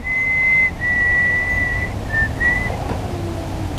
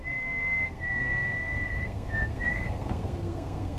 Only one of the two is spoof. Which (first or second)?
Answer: second